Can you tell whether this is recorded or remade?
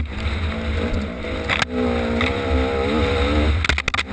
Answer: recorded